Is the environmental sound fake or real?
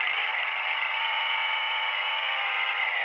fake